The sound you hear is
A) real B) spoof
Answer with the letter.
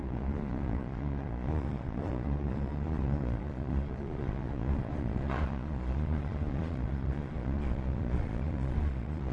B